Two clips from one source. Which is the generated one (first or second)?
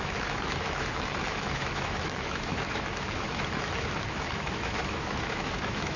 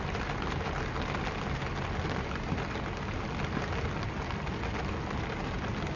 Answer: first